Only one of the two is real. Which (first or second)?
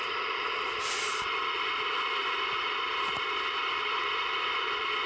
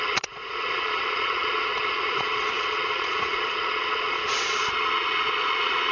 first